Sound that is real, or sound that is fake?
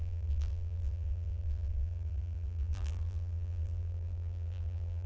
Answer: fake